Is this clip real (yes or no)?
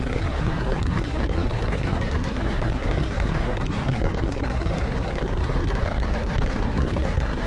no